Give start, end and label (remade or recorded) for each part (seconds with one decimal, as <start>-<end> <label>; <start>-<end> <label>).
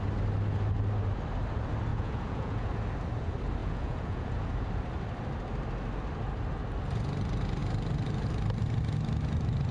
0.0-1.9 recorded; 1.9-2.7 remade; 2.7-3.6 recorded; 3.6-4.7 remade; 4.7-9.7 recorded